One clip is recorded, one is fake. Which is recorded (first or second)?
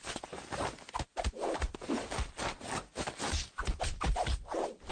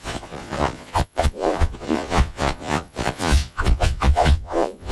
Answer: first